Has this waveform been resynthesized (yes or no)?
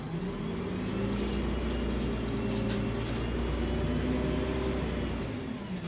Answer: no